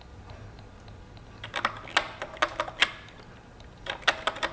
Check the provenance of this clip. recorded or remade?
recorded